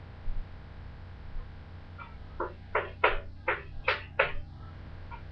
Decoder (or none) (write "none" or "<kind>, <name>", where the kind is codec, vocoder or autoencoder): none